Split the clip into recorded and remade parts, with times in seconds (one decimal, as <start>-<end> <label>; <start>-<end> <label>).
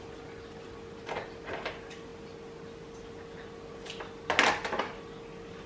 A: 0.0-5.7 recorded